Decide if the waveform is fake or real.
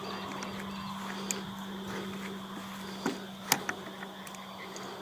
real